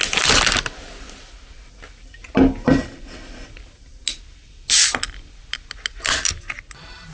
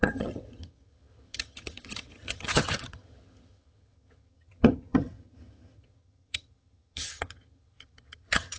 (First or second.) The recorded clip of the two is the first